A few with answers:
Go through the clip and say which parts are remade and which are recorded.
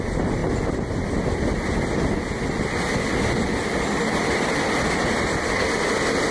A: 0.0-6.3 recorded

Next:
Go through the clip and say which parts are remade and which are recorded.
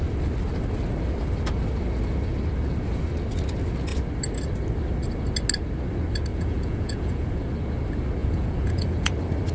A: 0.0-6.3 recorded; 6.3-7.4 remade; 7.4-8.2 recorded; 8.2-9.1 remade; 9.1-9.5 recorded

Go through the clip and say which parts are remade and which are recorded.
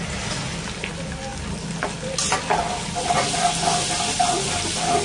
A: 0.0-5.0 recorded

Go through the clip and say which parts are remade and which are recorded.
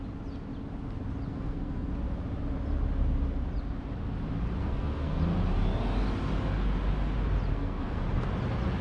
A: 0.0-1.3 recorded; 1.3-1.9 remade; 1.9-4.6 recorded; 4.6-5.2 remade; 5.2-7.5 recorded; 7.5-8.0 remade; 8.0-8.8 recorded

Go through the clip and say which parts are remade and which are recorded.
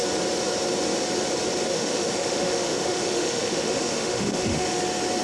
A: 0.0-1.7 recorded; 1.7-4.8 remade; 4.8-5.2 recorded